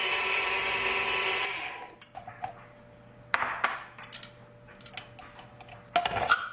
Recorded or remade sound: recorded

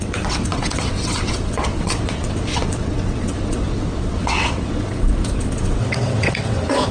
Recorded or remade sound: remade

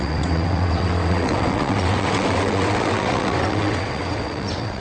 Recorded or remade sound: remade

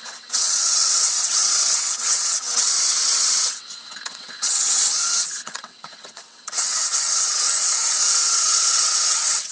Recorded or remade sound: remade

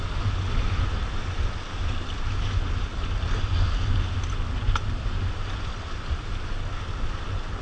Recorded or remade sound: recorded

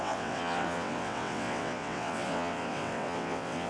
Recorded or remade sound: remade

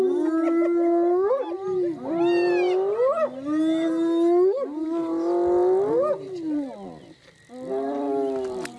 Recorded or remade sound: recorded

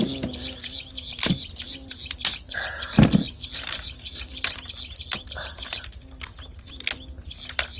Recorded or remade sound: recorded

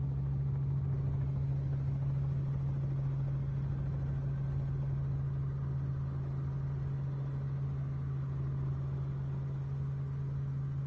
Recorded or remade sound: recorded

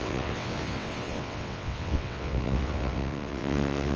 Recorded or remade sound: remade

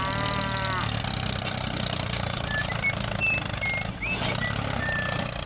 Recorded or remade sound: recorded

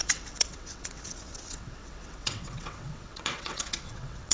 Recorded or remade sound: remade